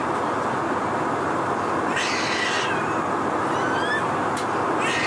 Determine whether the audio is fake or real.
real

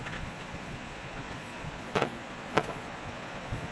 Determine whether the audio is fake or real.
fake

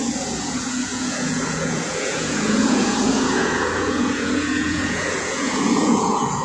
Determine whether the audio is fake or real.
fake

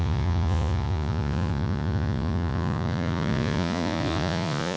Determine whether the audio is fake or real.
fake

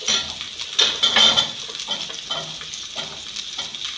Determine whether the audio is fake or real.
real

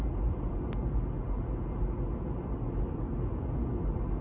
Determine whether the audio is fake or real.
real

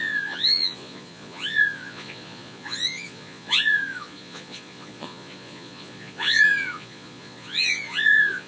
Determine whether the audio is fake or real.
fake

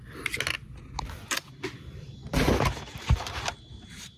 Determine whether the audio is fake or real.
real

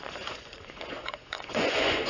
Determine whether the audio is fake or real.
fake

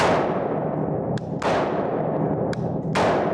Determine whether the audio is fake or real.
real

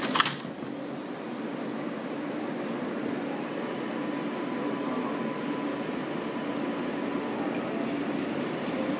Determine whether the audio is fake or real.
real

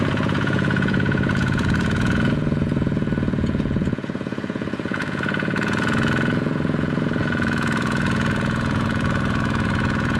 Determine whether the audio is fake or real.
fake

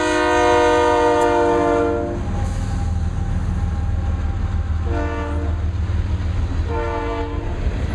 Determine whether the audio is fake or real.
real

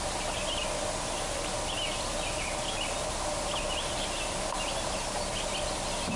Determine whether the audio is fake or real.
real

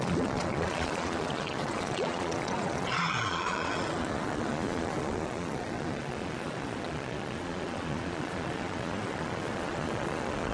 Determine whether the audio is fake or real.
fake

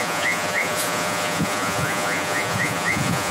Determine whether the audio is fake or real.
fake